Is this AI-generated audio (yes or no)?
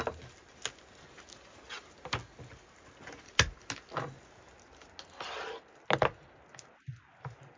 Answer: no